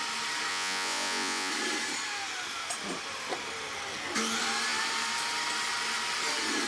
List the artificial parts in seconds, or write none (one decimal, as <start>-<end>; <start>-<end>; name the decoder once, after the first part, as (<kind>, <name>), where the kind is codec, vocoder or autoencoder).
0.5-1.5 (vocoder, Vocos)